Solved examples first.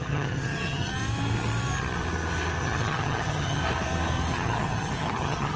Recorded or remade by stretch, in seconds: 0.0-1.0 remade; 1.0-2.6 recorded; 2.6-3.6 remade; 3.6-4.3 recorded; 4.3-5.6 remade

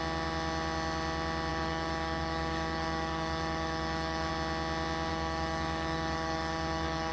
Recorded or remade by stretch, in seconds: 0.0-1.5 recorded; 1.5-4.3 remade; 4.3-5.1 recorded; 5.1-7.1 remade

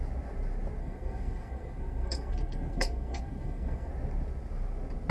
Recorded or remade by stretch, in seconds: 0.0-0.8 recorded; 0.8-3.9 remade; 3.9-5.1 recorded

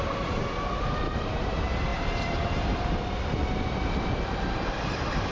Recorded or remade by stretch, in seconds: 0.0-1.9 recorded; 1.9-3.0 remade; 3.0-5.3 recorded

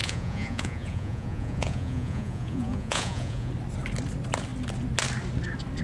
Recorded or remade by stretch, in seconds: 0.0-3.5 remade; 3.5-5.8 recorded

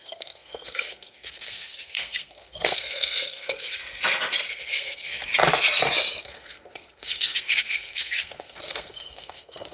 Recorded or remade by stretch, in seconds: 0.0-3.8 remade; 3.8-4.5 recorded; 4.5-5.2 remade; 5.2-6.2 recorded; 6.2-9.7 remade